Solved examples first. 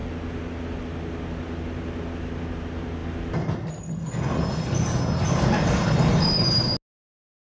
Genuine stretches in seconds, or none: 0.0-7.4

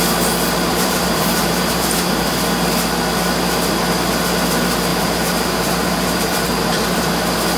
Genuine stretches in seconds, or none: 0.0-0.7; 2.3-4.9; 7.1-7.6

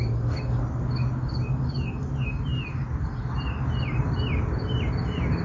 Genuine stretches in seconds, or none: 0.0-5.4

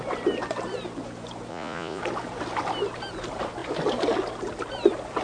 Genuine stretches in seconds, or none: 0.0-1.5; 2.0-5.2